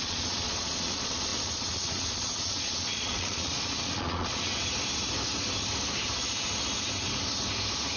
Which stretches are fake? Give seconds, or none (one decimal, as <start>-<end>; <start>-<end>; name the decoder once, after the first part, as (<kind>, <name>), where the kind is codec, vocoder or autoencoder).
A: 0.0-4.5 (vocoder, Vocos)